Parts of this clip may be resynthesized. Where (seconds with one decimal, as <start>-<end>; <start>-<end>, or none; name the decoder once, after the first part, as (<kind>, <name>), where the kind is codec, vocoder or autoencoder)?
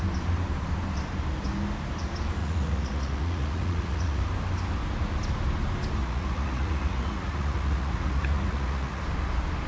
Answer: 2.4-4.2 (vocoder, Vocos); 6.0-9.0